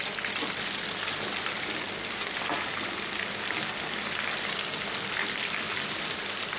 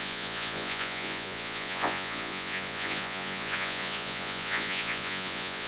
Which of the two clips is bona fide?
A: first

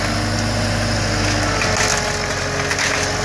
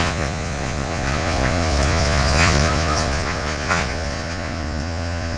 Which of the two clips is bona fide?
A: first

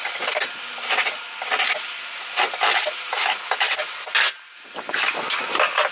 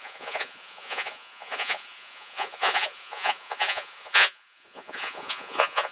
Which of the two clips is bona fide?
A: first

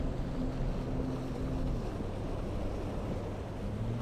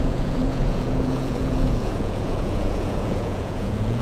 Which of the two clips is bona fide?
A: first